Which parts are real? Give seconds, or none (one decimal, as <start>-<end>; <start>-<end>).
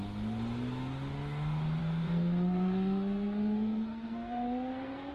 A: 0.0-1.8